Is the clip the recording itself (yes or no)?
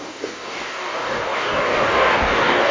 no